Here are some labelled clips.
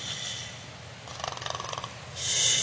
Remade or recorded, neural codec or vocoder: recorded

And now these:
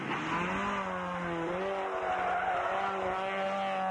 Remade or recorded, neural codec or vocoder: recorded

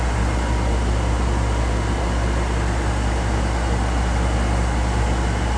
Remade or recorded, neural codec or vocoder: recorded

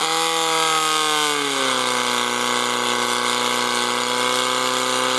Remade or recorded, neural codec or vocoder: recorded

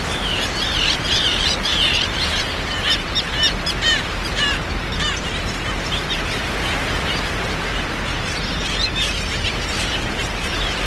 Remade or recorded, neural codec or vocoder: remade, vocoder, BigVGAN v2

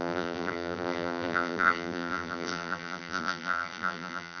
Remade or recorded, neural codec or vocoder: remade, vocoder, BigVGAN v2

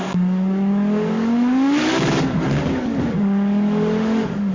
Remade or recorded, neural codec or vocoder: remade, codec, DAC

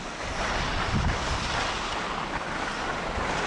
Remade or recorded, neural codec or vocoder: recorded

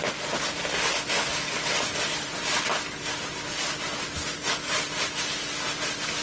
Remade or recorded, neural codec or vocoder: recorded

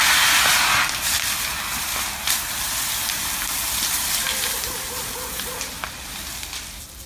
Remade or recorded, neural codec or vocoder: recorded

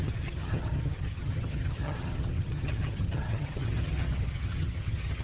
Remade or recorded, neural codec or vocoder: remade, vocoder, HiFi-GAN